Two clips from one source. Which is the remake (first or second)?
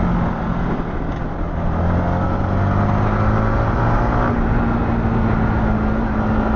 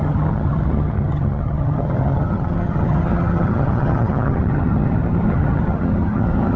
second